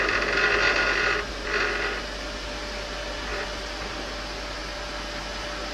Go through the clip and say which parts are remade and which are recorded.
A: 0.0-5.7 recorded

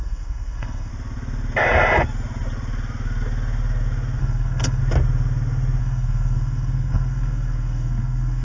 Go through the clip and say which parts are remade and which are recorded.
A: 0.0-0.9 remade; 0.9-4.2 recorded; 4.2-4.8 remade; 4.8-5.8 recorded; 5.8-8.4 remade

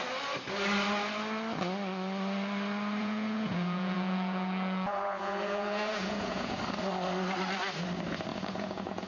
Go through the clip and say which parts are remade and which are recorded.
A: 0.0-3.0 recorded; 3.0-6.6 remade; 6.6-8.3 recorded; 8.3-9.1 remade

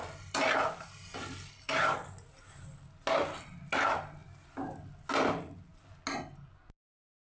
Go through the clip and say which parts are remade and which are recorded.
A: 0.0-7.3 recorded

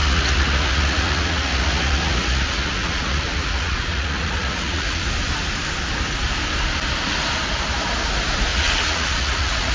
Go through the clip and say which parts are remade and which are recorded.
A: 0.0-5.0 remade; 5.0-8.5 recorded; 8.5-9.7 remade

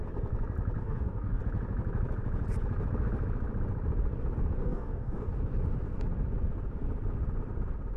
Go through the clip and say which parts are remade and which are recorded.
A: 0.0-0.8 recorded; 0.8-1.4 remade; 1.4-4.6 recorded; 4.6-5.3 remade; 5.3-8.0 recorded

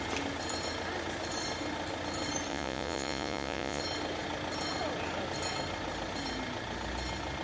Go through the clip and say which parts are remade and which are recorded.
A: 0.0-2.5 recorded; 2.5-3.8 remade; 3.8-7.4 recorded